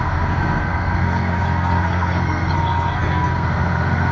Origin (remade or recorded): remade